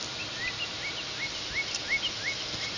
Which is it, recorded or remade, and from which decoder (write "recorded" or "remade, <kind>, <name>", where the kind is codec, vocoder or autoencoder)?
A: recorded